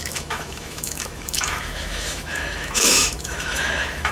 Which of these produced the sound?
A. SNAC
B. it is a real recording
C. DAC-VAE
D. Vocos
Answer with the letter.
C